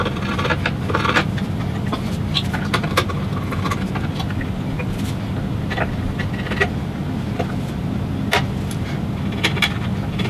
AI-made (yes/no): no